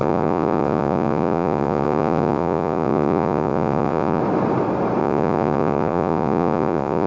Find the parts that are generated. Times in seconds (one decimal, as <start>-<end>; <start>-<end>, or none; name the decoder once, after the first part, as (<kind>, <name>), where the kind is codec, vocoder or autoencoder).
0.0-4.2 (vocoder, Vocos); 5.0-7.1